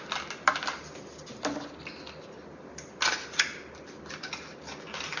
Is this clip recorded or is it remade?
recorded